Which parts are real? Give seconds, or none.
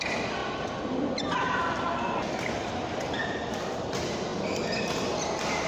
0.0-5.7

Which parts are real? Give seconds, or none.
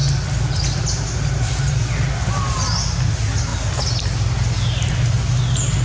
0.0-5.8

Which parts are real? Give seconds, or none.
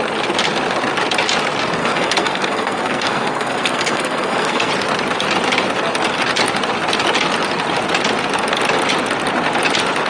0.0-1.8; 4.7-10.1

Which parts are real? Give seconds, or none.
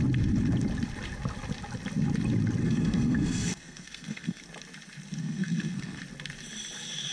0.0-2.6; 4.4-5.2; 6.0-7.1